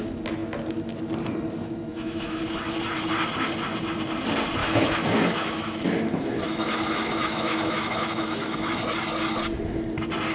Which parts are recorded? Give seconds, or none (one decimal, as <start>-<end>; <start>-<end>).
0.0-1.9; 2.4-4.6; 8.7-10.3